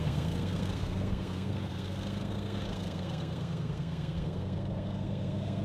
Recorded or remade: remade